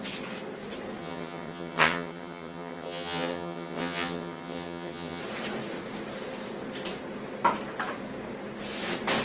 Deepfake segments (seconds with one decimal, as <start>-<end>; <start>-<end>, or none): 1.0-5.2